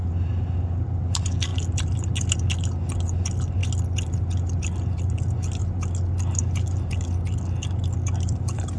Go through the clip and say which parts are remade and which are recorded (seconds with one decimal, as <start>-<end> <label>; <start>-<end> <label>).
0.0-8.8 recorded